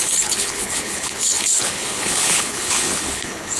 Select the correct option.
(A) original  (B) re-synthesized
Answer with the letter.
B